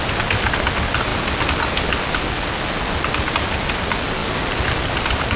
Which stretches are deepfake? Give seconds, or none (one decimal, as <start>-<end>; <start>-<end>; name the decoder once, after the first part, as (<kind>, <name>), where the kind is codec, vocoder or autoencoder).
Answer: none